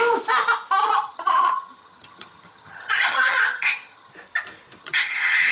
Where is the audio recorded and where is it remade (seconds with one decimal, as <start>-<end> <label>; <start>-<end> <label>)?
0.0-0.8 recorded; 0.8-4.1 remade; 4.1-4.8 recorded; 4.8-5.5 remade